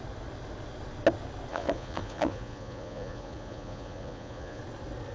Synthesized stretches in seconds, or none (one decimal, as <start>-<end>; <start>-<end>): 1.5-4.6